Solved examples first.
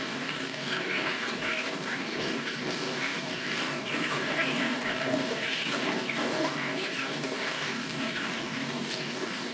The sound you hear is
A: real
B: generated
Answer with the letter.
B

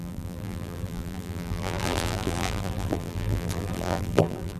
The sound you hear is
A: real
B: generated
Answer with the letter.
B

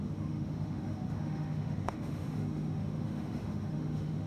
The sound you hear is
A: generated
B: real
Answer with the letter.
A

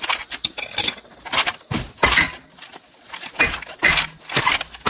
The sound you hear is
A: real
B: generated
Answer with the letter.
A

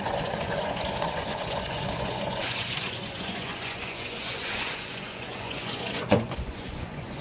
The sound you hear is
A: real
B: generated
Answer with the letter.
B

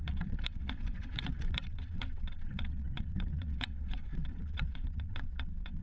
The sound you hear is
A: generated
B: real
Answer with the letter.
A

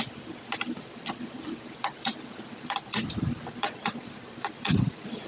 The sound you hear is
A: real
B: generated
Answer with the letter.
B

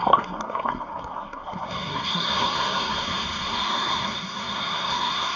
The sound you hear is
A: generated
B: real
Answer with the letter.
A